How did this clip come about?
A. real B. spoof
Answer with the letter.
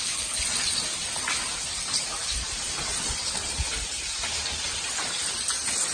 A